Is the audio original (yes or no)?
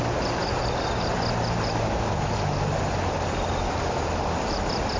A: yes